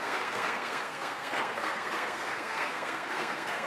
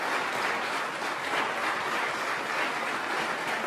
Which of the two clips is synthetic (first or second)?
first